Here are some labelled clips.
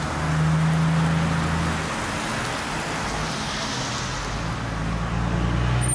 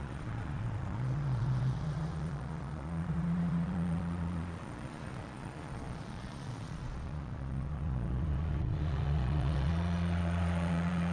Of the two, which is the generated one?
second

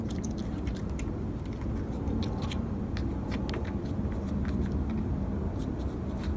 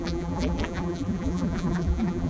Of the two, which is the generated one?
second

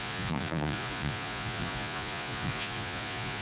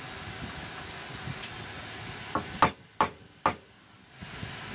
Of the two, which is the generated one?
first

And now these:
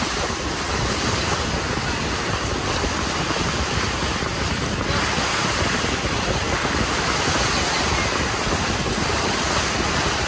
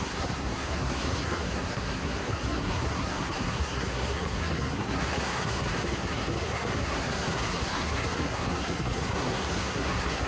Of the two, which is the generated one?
second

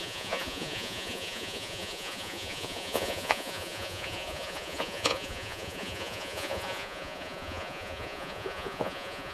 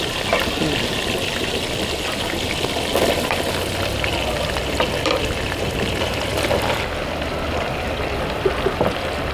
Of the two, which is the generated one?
first